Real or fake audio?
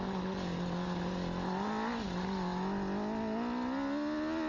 real